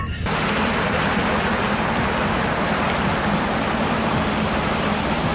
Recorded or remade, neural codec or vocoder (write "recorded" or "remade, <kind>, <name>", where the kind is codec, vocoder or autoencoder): recorded